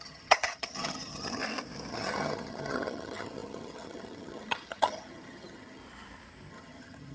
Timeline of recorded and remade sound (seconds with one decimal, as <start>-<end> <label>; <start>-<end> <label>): 0.0-1.4 remade; 1.4-1.9 recorded; 1.9-5.8 remade; 5.8-6.5 recorded; 6.5-7.1 remade